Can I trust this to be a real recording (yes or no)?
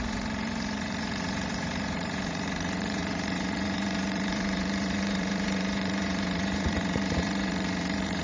no